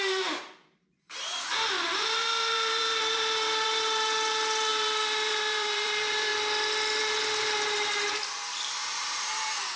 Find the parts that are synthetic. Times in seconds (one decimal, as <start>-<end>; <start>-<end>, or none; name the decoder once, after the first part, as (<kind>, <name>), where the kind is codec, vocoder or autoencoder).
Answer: 0.0-6.3 (vocoder, BigVGAN v2); 7.0-9.8